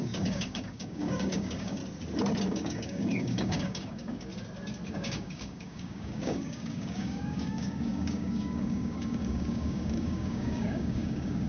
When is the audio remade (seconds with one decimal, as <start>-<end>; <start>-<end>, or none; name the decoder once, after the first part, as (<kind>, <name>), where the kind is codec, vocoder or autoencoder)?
0.0-1.8 (codec, DAC); 2.5-4.3; 4.9-11.5